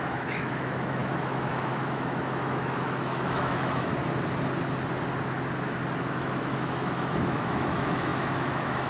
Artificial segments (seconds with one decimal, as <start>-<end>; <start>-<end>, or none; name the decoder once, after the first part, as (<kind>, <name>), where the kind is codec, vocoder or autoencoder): 0.0-3.9 (autoencoder, DAC-VAE); 6.0-8.9

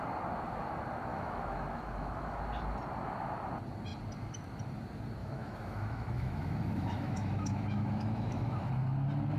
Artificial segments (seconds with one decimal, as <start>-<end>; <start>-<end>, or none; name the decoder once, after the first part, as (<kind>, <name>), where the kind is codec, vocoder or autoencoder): 1.1-2.4 (autoencoder, DAC-VAE); 5.2-8.7

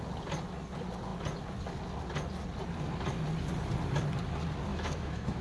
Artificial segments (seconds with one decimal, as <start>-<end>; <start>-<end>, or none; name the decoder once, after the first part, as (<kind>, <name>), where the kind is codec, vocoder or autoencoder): 4.7-5.4 (autoencoder, DAC-VAE)